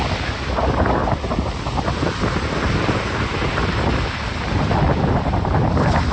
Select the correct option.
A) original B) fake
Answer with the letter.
A